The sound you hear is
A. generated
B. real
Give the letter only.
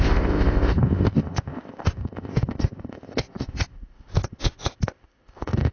A